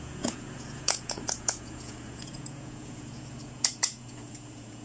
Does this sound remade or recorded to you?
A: remade